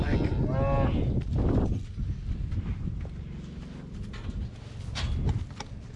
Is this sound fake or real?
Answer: real